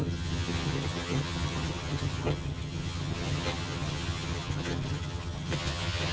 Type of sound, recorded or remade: remade